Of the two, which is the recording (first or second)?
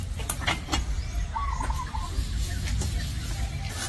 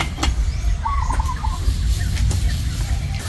first